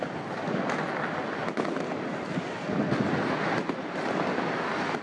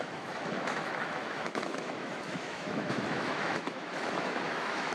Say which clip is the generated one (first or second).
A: second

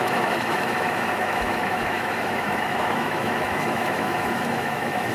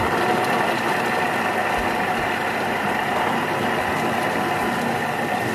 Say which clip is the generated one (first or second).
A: first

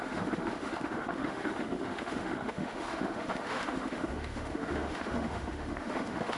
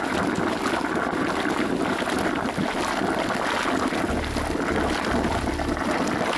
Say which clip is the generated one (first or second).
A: first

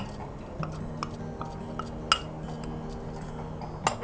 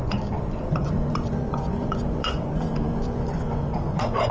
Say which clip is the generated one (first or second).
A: second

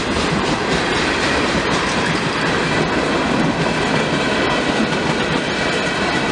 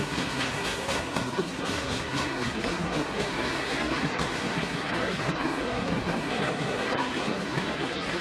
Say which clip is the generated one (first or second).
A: second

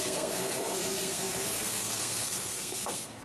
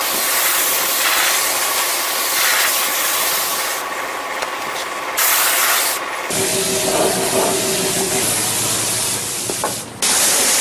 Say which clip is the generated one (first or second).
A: first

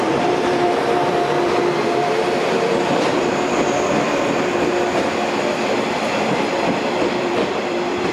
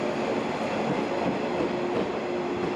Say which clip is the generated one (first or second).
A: first